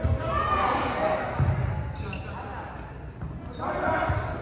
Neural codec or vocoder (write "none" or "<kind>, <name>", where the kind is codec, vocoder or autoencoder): none